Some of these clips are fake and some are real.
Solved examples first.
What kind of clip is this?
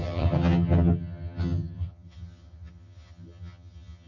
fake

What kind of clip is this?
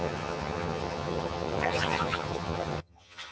fake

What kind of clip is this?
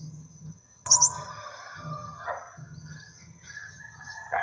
fake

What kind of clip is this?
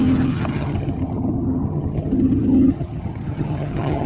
fake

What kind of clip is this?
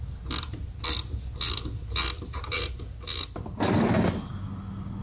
real